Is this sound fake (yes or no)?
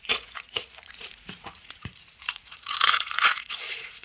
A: yes